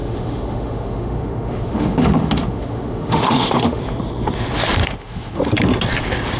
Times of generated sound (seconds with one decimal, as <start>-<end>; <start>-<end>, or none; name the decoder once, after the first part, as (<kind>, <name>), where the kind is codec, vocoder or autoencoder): 0.0-3.8 (autoencoder, DAC-VAE); 4.8-5.4